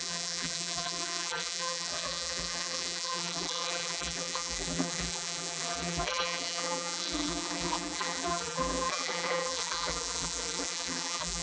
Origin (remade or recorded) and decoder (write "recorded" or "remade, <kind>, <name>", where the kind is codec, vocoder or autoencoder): remade, vocoder, BigVGAN v2